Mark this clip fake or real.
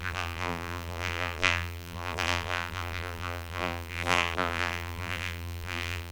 fake